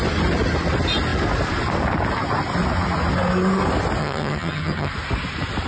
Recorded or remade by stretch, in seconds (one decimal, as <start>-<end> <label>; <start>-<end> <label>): 0.0-4.0 recorded; 4.0-4.9 remade; 4.9-5.7 recorded